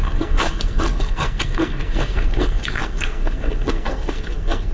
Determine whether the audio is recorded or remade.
remade